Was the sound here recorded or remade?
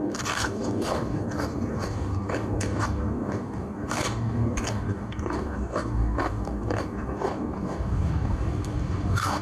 remade